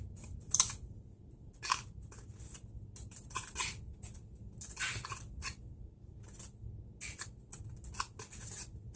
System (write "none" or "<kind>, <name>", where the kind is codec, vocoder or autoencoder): none